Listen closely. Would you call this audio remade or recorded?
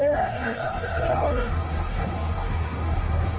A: remade